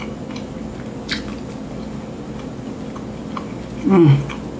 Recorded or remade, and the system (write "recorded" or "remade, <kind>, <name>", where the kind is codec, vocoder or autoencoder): recorded